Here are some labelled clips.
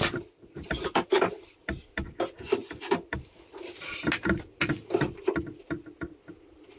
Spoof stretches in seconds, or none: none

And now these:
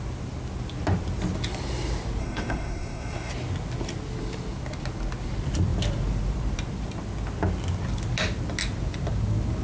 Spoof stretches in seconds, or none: 2.2-3.3 (codec, SNAC)

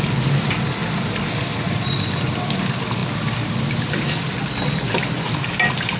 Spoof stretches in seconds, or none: none